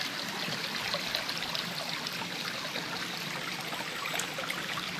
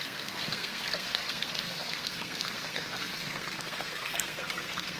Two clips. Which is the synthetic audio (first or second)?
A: second